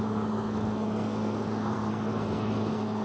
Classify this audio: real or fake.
fake